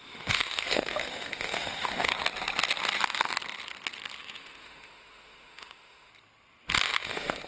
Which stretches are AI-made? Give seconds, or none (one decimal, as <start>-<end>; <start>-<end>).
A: 0.0-2.1; 4.2-6.1; 6.8-7.5